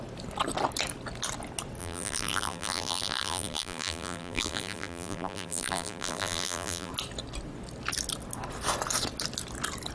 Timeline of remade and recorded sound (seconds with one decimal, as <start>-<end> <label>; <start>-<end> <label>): 0.0-1.8 recorded; 1.8-6.9 remade; 6.9-9.9 recorded